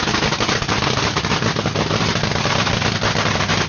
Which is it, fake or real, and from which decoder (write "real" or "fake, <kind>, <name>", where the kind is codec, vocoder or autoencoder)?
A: real